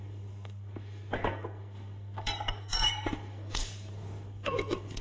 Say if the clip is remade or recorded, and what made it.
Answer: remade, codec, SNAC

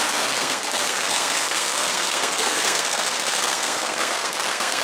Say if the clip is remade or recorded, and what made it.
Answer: remade, codec, SNAC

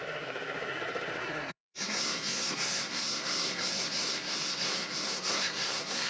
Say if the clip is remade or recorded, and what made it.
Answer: remade, codec, SNAC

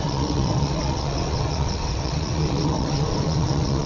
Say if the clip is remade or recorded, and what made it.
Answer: remade, vocoder, WaveNeXt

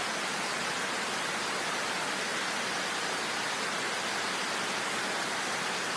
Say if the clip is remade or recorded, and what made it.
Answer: recorded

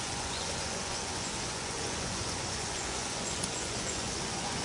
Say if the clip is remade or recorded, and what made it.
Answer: remade, vocoder, Vocos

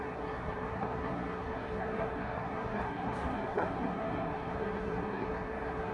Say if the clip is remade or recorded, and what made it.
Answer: remade, codec, SNAC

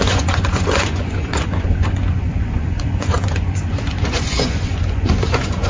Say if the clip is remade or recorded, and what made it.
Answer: remade, vocoder, Vocos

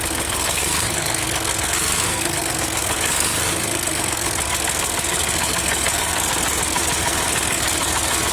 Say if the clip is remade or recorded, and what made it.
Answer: remade, codec, SNAC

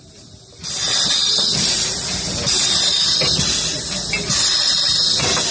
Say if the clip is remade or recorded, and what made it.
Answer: recorded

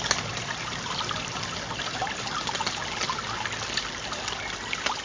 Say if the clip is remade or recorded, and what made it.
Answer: recorded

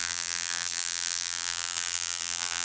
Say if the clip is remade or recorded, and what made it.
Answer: remade, vocoder, BigVGAN v2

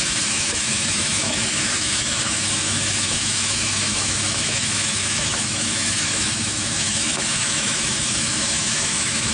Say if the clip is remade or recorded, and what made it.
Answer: remade, autoencoder, DAC-VAE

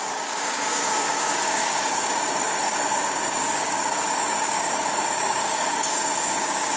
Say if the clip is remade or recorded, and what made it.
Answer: remade, codec, DAC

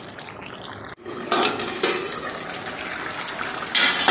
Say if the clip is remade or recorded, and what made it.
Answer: recorded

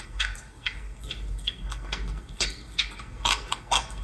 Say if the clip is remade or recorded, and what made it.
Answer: remade, codec, SNAC